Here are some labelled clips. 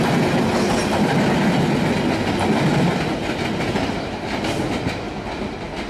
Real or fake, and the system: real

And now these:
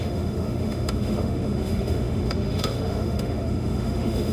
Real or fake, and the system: fake, autoencoder, DAC-VAE